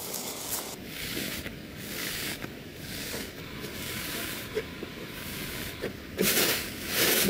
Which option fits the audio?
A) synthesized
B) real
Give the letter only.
A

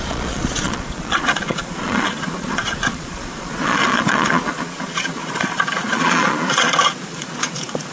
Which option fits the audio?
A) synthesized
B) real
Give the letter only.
A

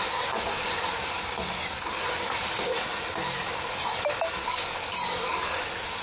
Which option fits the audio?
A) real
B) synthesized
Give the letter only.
A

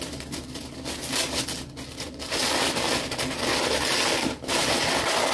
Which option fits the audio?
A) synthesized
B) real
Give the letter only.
B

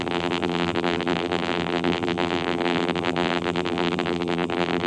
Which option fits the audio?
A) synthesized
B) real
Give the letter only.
A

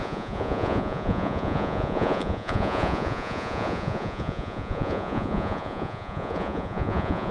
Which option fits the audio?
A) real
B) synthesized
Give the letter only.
B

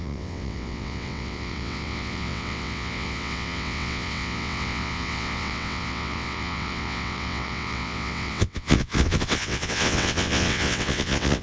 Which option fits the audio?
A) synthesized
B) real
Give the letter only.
A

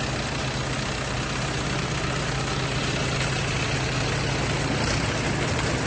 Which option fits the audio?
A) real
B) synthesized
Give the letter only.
A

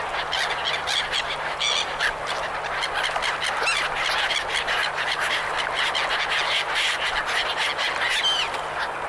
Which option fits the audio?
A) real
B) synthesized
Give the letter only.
A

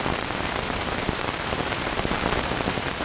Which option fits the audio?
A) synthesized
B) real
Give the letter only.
A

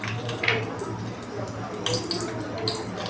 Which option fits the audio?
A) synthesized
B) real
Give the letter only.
B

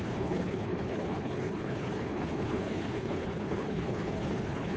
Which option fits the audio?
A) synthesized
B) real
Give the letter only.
A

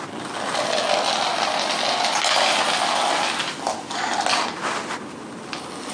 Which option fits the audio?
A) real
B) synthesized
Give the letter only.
A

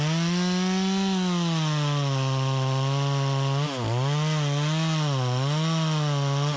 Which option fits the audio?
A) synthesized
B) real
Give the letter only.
B